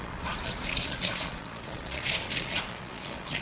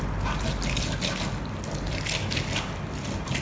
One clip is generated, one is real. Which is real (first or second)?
second